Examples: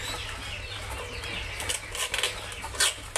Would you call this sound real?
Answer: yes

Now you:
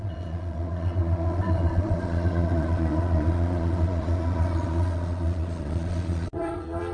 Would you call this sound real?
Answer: no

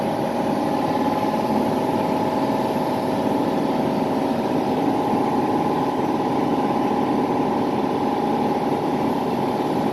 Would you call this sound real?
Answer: yes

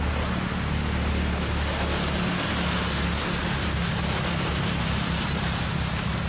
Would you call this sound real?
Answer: yes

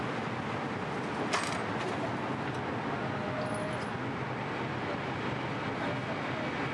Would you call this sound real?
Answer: yes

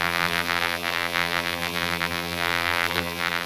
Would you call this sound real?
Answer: no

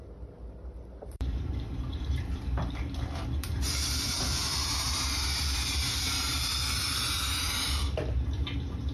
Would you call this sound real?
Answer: no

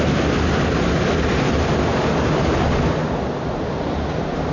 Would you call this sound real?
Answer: yes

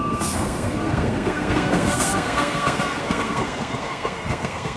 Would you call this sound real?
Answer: no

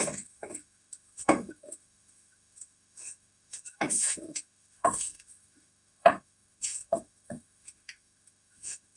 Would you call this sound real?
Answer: no